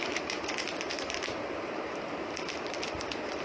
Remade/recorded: remade